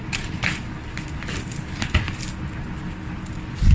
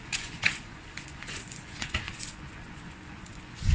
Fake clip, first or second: second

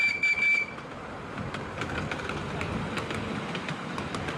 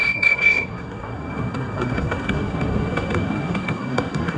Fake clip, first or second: second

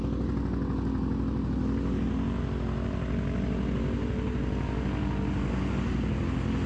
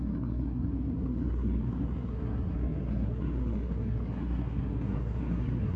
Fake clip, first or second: second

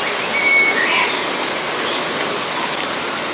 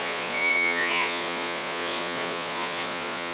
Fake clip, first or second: second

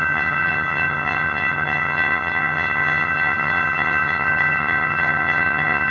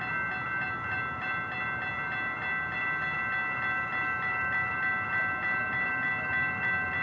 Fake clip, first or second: first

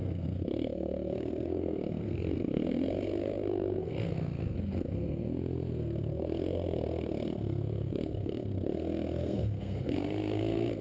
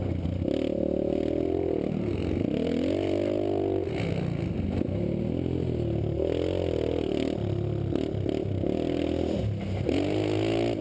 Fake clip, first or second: first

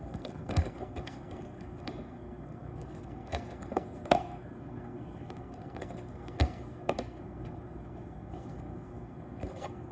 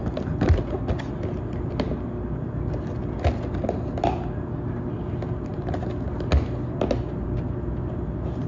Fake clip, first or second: first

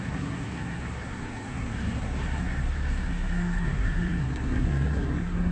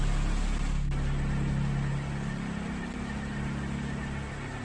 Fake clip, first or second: first